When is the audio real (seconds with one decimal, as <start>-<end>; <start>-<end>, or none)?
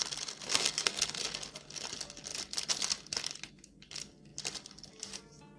0.0-0.5; 1.2-5.6